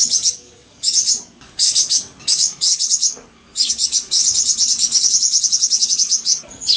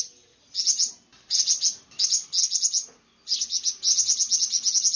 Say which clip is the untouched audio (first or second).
second